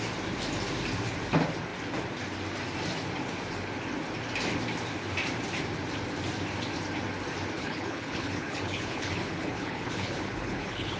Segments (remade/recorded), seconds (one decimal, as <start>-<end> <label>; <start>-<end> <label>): 0.0-7.6 recorded; 7.6-11.0 remade

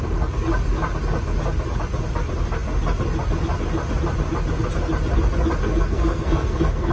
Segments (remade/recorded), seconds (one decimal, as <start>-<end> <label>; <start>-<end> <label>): 0.0-5.6 recorded; 5.6-6.9 remade